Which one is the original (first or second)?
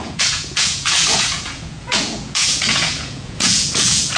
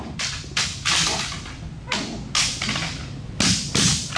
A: second